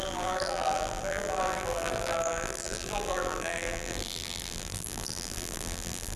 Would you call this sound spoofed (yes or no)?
yes